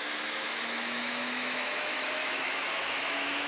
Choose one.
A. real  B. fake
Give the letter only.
B